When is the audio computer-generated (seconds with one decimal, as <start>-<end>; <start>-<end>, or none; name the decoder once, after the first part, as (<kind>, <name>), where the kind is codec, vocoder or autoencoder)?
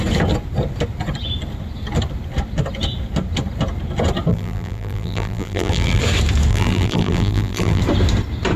4.3-6.0 (vocoder, BigVGAN v2); 6.5-7.8